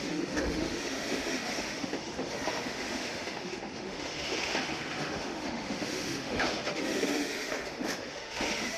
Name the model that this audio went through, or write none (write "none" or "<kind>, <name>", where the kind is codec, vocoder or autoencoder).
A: autoencoder, DAC-VAE